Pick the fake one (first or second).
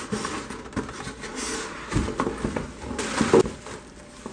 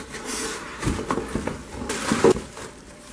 second